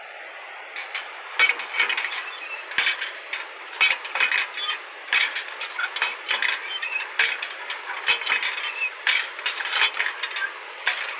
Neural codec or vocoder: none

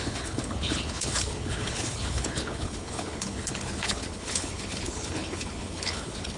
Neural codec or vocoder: codec, HILCodec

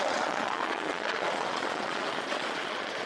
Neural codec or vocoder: vocoder, Vocos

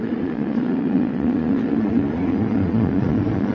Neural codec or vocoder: vocoder, Vocos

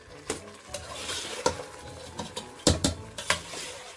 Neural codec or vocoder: none